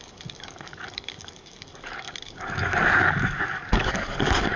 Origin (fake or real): fake